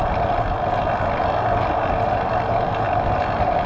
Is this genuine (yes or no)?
yes